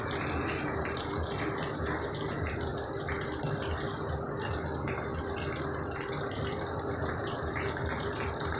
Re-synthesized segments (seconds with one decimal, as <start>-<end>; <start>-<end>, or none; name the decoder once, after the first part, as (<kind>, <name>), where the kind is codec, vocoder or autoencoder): 0.0-2.7 (vocoder, BigVGAN v2); 4.4-5.1; 7.1-8.6